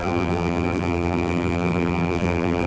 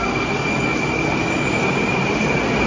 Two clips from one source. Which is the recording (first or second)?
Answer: second